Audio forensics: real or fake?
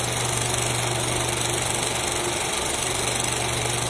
real